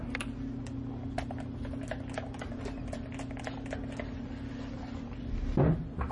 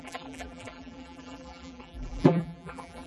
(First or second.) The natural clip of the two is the first